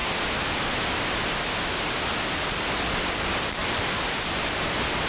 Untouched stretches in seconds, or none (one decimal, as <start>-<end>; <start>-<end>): 0.0-5.1